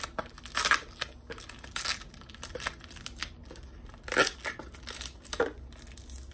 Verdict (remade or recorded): recorded